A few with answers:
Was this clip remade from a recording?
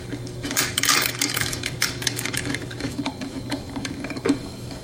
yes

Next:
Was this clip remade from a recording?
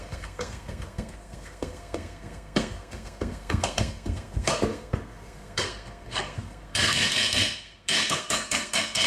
yes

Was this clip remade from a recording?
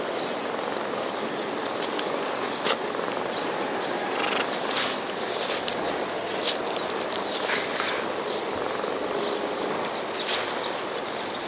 no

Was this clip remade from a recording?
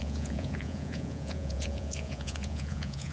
yes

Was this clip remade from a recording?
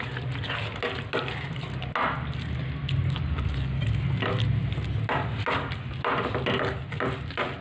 no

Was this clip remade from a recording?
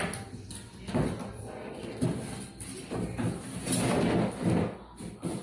no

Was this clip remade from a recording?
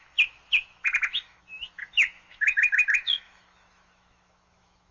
yes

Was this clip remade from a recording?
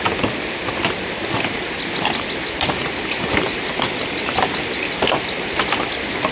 no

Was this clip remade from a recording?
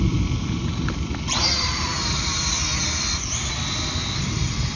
yes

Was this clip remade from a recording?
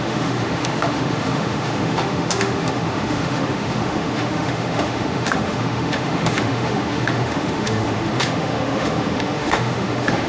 yes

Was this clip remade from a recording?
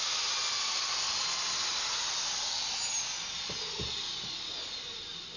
no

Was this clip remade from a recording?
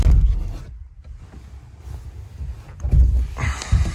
no